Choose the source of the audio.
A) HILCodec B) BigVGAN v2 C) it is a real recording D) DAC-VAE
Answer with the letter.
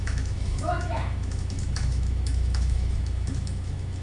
D